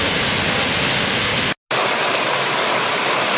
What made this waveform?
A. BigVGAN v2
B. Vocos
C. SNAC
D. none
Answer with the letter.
D